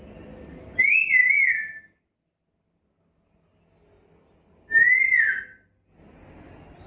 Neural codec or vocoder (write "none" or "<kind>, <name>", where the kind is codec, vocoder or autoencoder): none